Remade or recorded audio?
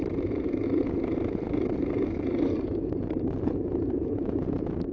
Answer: remade